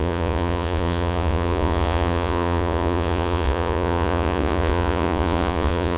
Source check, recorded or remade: remade